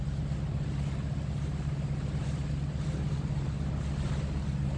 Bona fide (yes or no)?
yes